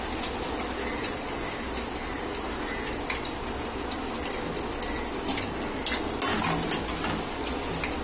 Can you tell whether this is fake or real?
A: real